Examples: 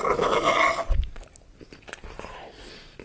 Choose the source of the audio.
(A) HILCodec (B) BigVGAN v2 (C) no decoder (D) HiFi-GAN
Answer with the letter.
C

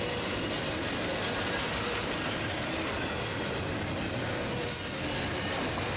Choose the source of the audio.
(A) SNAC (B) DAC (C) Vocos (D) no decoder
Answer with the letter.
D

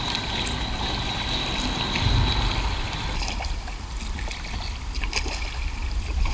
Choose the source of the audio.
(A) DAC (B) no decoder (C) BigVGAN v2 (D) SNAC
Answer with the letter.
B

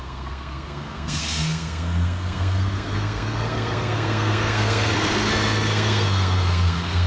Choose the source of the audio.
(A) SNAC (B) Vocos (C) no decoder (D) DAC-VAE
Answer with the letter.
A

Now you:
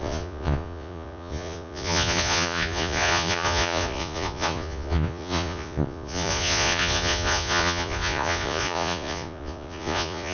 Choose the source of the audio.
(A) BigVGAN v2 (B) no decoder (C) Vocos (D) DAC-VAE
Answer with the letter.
C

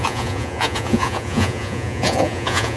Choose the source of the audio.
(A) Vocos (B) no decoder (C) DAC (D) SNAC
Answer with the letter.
A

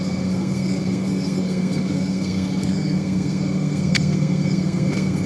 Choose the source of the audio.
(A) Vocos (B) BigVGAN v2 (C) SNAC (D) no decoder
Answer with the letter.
C